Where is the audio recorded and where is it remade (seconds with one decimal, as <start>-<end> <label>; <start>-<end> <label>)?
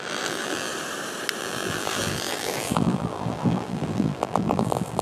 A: 0.0-0.7 remade; 0.7-1.4 recorded; 1.4-5.0 remade